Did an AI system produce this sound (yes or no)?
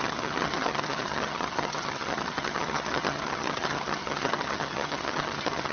yes